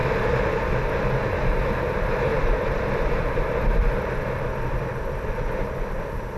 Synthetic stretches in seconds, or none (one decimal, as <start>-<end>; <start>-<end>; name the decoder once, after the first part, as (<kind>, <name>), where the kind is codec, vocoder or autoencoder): 2.3-6.0 (vocoder, BigVGAN v2)